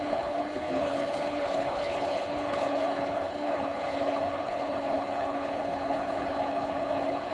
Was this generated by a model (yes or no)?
yes